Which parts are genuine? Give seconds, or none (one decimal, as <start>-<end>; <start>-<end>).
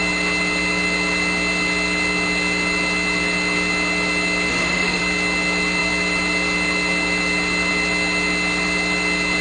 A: 0.0-4.5; 5.0-9.4